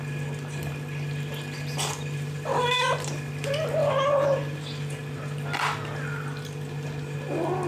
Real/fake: fake